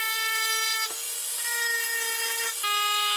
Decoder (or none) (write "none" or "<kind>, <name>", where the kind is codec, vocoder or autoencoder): none